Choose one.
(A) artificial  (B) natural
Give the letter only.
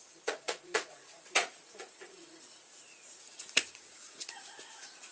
A